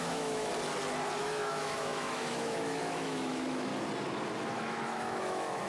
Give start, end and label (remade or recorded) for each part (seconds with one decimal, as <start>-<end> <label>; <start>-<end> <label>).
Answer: 0.0-0.5 remade; 0.5-1.2 recorded; 1.2-3.7 remade; 3.7-4.5 recorded; 4.5-5.7 remade